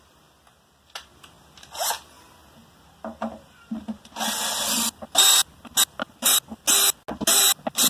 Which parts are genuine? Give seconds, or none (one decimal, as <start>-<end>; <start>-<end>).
0.0-7.9